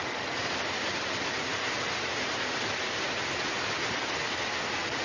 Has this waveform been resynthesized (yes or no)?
no